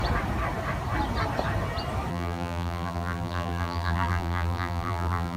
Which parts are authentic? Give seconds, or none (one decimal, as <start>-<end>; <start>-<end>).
0.0-2.1